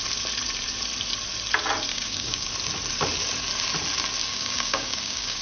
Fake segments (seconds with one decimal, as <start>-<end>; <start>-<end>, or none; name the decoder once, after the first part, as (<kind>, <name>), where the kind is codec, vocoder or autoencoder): 1.9-2.5 (codec, DAC); 4.2-5.4